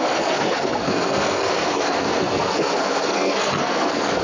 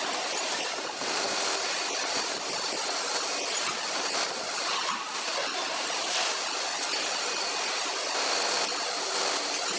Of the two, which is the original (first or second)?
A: second